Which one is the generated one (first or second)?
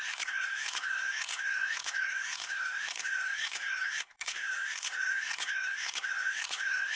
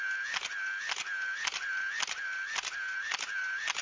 first